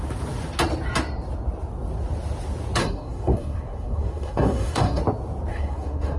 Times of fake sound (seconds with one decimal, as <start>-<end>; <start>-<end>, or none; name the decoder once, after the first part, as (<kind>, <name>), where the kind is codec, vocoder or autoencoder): 2.8-5.0 (codec, SNAC); 5.5-6.2